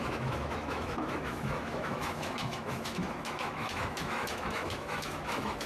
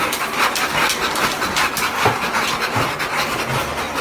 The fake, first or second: first